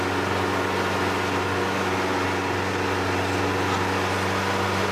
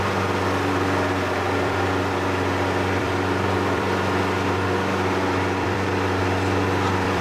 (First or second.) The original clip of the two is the first